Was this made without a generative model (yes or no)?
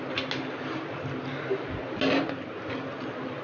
yes